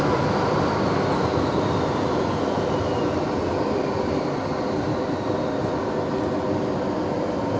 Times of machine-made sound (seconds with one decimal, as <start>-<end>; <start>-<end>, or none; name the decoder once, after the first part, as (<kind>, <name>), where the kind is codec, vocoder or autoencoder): none